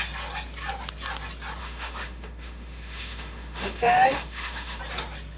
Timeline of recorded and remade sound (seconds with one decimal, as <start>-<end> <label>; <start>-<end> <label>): 0.0-1.6 recorded; 1.6-4.8 remade; 4.8-5.4 recorded